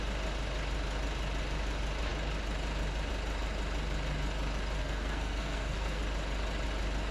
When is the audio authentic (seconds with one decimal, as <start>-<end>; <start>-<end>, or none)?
0.0-4.8; 6.0-7.1